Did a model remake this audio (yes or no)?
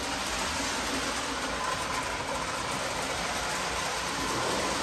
no